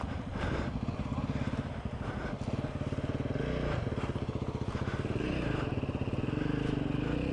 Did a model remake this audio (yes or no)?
no